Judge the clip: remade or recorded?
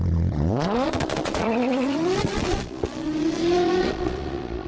remade